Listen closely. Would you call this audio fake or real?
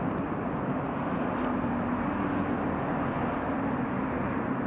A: real